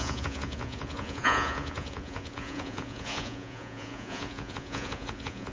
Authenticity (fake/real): fake